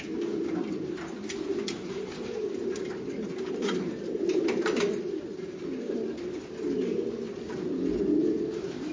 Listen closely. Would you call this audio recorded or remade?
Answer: recorded